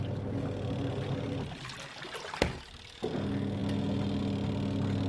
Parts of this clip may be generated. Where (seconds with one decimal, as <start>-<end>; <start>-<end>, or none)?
none